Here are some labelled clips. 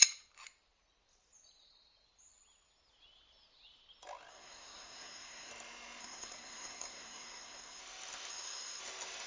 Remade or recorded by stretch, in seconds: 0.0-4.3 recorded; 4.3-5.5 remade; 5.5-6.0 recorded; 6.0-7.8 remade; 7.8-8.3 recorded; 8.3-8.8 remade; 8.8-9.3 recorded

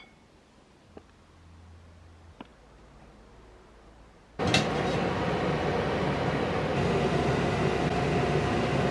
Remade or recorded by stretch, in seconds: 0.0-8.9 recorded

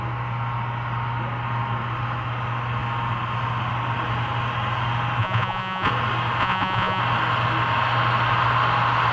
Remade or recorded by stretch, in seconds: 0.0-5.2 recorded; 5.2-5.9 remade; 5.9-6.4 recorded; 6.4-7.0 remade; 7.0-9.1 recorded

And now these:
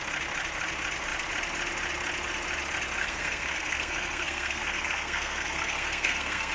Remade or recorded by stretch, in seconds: 0.0-3.0 recorded; 3.0-6.5 remade

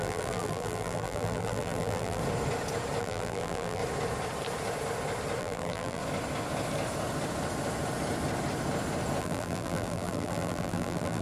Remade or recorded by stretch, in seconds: 0.0-2.2 remade; 2.2-3.0 recorded; 3.0-3.8 remade; 3.8-5.4 recorded; 5.4-6.0 remade; 6.0-9.2 recorded; 9.2-11.2 remade